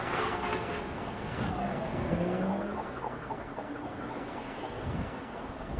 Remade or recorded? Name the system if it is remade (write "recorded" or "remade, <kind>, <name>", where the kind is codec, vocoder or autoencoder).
remade, codec, SNAC